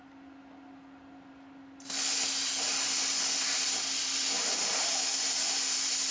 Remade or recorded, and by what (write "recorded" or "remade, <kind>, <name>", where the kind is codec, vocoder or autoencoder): recorded